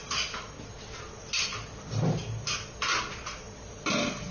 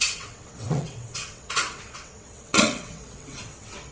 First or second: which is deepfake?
second